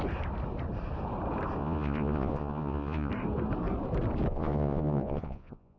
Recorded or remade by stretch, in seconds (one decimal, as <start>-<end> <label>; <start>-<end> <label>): 0.0-1.6 recorded; 1.6-3.1 remade; 3.1-4.3 recorded; 4.3-5.8 remade